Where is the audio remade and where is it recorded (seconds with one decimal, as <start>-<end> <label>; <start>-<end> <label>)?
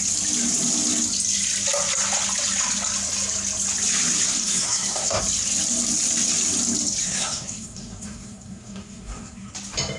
0.0-4.4 recorded; 4.4-5.2 remade; 5.2-7.0 recorded; 7.0-9.5 remade; 9.5-10.0 recorded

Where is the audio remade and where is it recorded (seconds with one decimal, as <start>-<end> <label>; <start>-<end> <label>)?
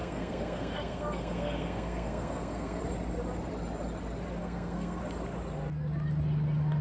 0.0-2.8 remade; 2.8-4.4 recorded; 4.4-5.0 remade; 5.0-6.8 recorded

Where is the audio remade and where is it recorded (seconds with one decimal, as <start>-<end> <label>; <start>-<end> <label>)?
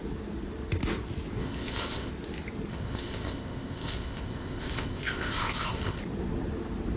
0.0-1.4 recorded; 1.4-2.1 remade; 2.1-2.7 recorded; 2.7-6.0 remade; 6.0-7.0 recorded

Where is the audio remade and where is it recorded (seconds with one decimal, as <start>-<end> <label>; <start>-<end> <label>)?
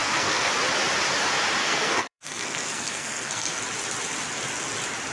0.0-0.5 remade; 0.5-1.6 recorded; 1.6-3.6 remade; 3.6-5.1 recorded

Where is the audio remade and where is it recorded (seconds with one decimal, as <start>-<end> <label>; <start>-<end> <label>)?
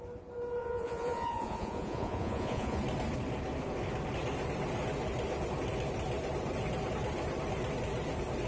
0.0-0.6 recorded; 0.6-2.8 remade; 2.8-8.5 recorded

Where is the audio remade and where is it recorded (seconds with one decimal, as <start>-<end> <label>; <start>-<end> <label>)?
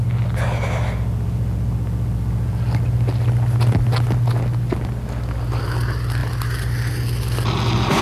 0.0-8.0 recorded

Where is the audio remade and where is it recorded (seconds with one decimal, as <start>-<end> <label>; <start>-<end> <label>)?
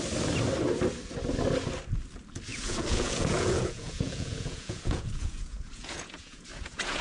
0.0-2.5 recorded; 2.5-7.0 remade